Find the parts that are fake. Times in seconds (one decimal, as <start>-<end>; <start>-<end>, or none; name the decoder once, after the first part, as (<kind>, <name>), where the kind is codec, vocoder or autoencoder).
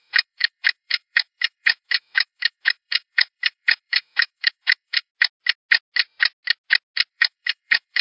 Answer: 0.0-5.1 (autoencoder, DAC-VAE); 7.1-8.0